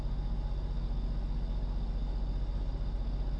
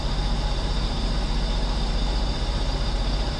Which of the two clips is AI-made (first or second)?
second